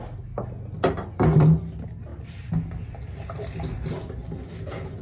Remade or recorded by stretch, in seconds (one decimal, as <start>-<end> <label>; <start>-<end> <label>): 0.0-5.0 recorded